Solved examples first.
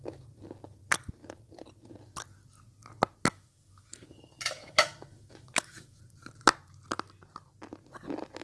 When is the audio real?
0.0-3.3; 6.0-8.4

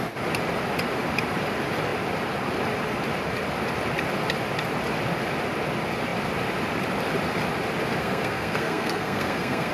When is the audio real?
0.0-8.0

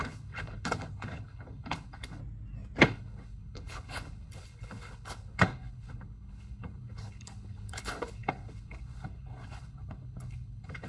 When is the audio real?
2.2-2.8

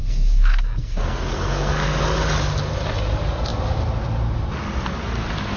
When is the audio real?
2.0-5.6

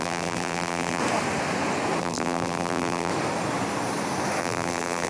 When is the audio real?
1.0-2.0; 3.1-4.4

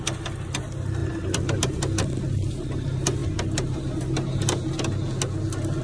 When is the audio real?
0.0-3.2; 4.7-5.8

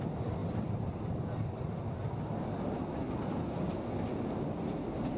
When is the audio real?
0.0-5.2